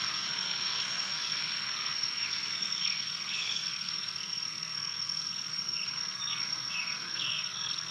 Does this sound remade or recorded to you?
remade